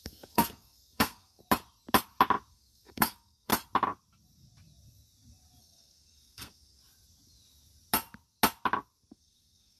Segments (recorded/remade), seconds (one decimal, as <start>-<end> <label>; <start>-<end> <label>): 0.0-1.4 remade; 1.4-2.5 recorded; 2.5-3.5 remade; 3.5-5.6 recorded; 5.6-6.8 remade; 6.8-9.1 recorded; 9.1-9.8 remade